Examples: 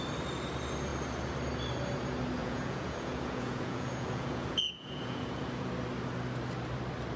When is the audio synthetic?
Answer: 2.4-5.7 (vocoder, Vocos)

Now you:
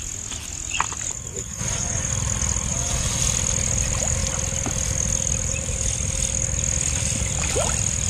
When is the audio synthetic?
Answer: 1.3-2.1 (vocoder, Vocos); 2.7-3.2

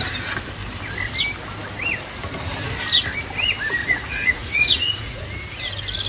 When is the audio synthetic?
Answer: 3.8-5.2 (vocoder, Vocos)

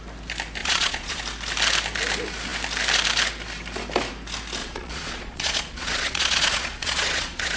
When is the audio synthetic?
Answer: 0.6-1.2 (vocoder, Vocos); 4.6-7.6

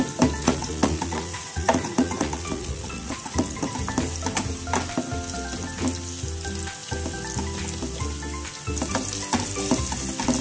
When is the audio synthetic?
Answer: 0.4-3.7 (vocoder, Vocos)

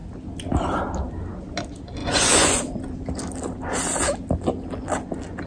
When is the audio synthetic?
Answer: 2.0-2.6 (vocoder, Vocos)